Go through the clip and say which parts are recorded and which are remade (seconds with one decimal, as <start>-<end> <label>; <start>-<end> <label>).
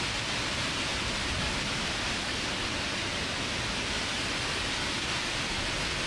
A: 0.0-6.1 recorded